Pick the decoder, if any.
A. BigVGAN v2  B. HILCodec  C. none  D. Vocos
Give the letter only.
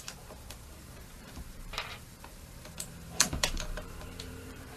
A